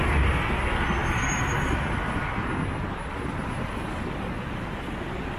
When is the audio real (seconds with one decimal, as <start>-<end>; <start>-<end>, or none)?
0.0-5.4